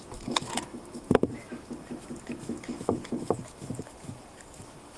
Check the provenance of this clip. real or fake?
fake